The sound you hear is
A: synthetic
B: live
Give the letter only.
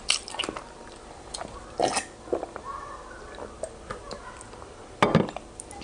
A